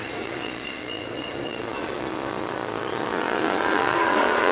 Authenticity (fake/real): fake